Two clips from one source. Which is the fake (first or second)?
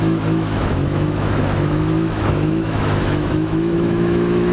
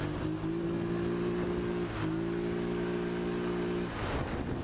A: first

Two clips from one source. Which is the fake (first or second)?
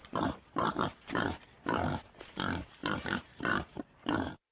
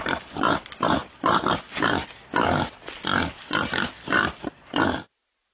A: first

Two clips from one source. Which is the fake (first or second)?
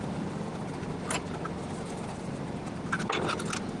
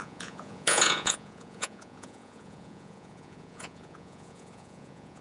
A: second